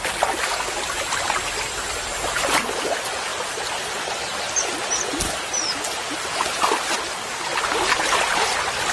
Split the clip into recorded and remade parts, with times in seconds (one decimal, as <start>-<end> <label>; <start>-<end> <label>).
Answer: 0.0-3.3 recorded; 3.3-4.4 remade; 4.4-7.5 recorded; 7.5-8.9 remade